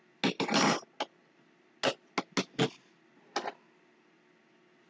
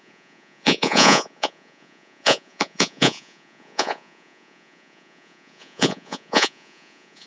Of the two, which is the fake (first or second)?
second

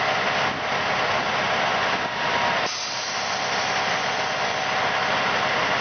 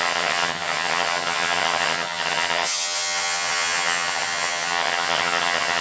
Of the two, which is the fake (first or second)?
second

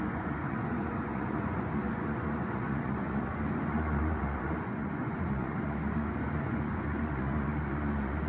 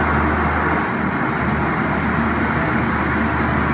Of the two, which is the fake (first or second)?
first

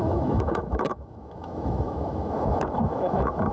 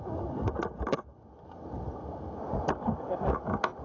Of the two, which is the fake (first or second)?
first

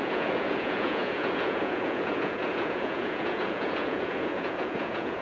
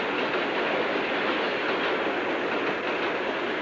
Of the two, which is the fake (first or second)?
first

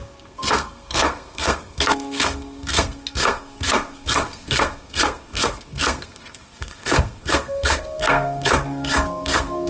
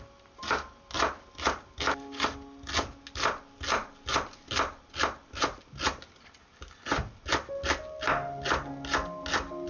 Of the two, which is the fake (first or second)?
first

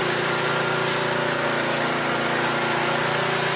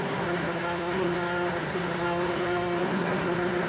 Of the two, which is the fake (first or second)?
second